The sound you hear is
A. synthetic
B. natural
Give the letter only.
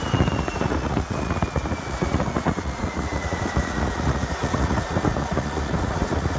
A